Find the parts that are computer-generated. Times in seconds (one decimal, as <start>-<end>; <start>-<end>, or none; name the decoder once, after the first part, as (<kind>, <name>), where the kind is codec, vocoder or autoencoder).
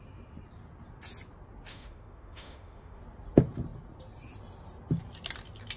1.7-3.0 (autoencoder, DAC-VAE)